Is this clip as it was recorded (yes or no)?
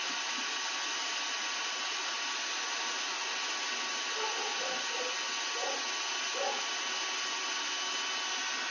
yes